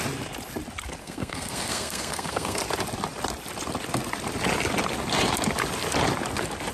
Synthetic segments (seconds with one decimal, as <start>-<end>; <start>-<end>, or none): 1.0-2.6